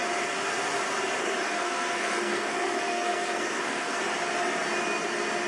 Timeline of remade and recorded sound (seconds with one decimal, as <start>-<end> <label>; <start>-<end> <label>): 0.0-1.2 recorded; 1.2-4.0 remade; 4.0-5.5 recorded